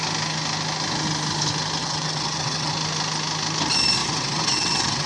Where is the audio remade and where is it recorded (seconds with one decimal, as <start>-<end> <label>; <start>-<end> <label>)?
0.0-1.8 recorded; 1.8-2.7 remade; 2.7-4.0 recorded; 4.0-5.1 remade

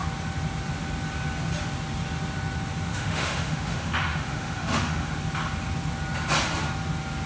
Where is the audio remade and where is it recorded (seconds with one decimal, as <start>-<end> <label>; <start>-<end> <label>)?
0.0-2.9 recorded; 2.9-5.2 remade; 5.2-7.3 recorded